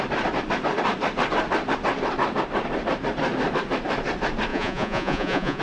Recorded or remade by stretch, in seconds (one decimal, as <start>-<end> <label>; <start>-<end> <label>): 0.0-4.5 recorded; 4.5-5.6 remade